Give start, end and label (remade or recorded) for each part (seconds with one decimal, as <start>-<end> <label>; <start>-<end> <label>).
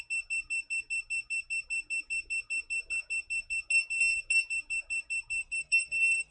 0.0-5.4 recorded; 5.4-6.3 remade